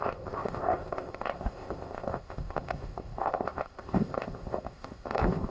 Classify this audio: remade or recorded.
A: remade